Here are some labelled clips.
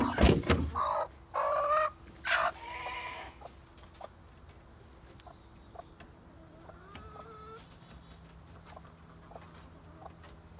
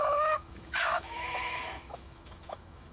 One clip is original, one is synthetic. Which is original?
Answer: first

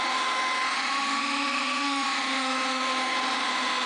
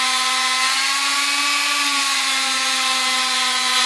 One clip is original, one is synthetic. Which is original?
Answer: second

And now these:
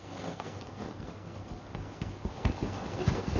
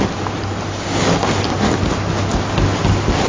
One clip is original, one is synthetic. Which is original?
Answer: second